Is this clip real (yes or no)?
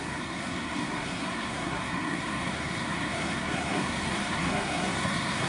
no